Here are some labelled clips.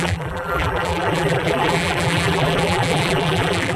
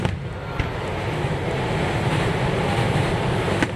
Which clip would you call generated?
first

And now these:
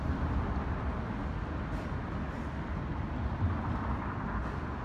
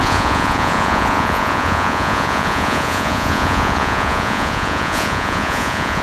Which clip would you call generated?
second